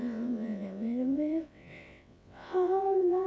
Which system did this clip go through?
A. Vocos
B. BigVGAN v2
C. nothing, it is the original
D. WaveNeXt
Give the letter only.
D